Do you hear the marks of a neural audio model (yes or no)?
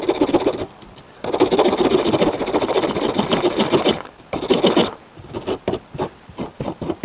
no